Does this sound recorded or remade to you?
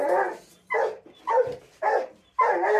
recorded